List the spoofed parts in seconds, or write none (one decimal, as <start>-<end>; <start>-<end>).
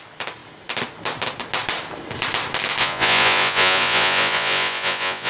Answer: 2.8-5.3